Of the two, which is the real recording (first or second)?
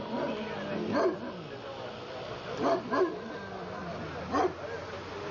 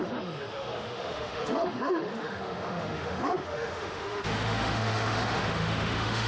first